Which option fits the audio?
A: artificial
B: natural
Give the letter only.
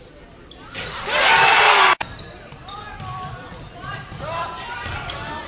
A